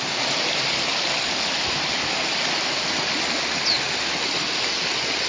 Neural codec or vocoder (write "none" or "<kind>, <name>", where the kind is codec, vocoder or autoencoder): none